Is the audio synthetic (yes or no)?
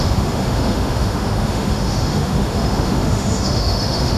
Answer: yes